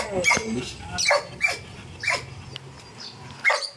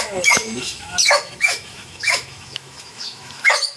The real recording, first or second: first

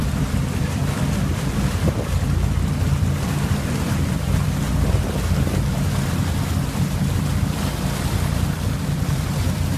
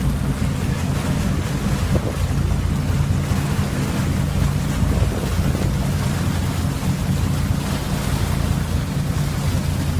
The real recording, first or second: second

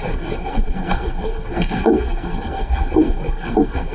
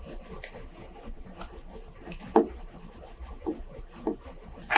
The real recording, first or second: second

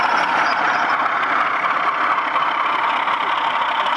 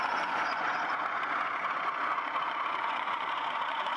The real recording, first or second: first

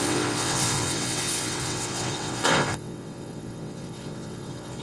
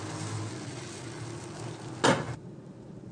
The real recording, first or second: second